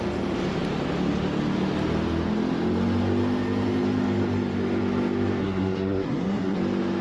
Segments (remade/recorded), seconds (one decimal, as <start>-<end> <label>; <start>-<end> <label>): 0.0-5.4 recorded; 5.4-6.6 remade; 6.6-7.0 recorded